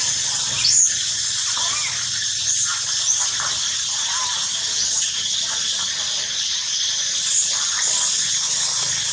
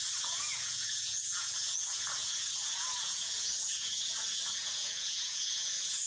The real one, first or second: first